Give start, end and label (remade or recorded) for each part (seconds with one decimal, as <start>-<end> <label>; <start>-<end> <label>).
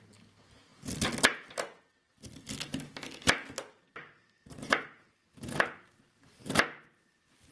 0.0-7.5 recorded